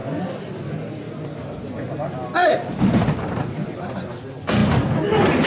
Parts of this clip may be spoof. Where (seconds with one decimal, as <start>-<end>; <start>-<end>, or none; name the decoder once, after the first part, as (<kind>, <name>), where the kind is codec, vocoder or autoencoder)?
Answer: none